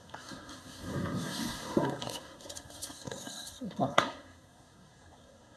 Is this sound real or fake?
fake